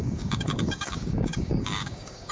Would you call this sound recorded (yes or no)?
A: no